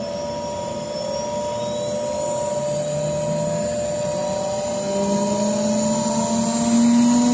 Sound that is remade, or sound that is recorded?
recorded